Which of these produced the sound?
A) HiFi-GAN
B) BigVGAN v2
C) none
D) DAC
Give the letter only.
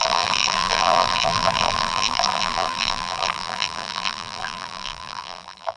B